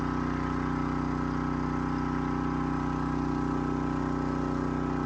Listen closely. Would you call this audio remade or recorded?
recorded